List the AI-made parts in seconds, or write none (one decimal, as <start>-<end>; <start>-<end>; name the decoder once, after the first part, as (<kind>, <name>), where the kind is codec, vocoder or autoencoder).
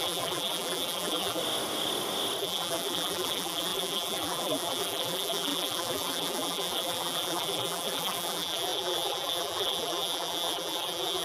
0.0-1.4 (vocoder, BigVGAN v2); 2.4-11.2